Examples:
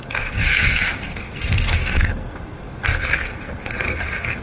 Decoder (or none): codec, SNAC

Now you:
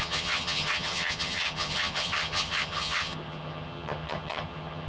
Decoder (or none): vocoder, HiFi-GAN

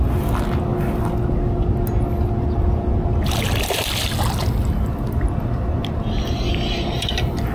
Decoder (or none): none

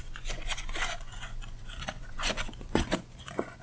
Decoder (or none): vocoder, Vocos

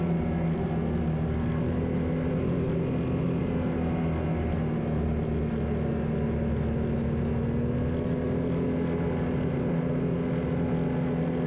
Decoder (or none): none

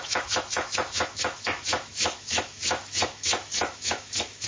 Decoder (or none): autoencoder, DAC-VAE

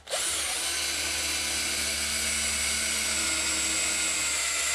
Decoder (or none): none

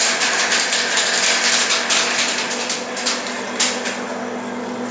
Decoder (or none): none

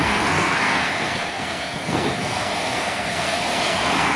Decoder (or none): codec, SNAC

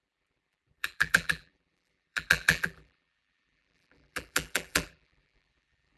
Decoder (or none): vocoder, BigVGAN v2